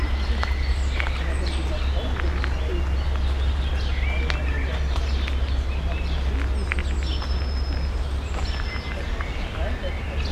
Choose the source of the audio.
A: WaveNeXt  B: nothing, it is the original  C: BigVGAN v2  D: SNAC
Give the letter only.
B